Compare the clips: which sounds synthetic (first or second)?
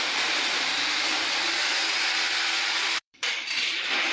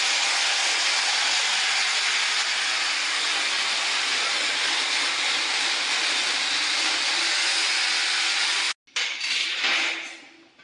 first